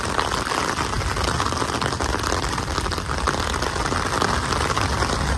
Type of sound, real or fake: real